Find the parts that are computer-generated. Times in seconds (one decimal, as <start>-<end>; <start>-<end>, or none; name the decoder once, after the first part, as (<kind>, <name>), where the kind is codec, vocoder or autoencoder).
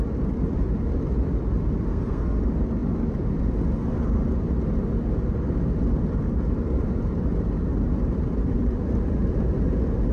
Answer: 1.9-2.4 (codec, SNAC)